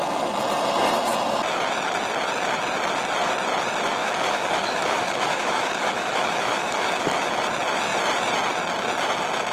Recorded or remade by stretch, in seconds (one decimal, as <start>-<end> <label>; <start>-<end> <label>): 0.0-4.0 recorded; 4.0-7.3 remade; 7.3-9.5 recorded